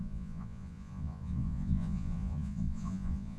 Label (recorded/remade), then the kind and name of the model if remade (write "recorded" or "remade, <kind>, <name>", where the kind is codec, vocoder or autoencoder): remade, vocoder, Vocos